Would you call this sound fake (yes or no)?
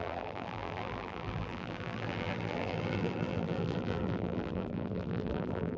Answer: yes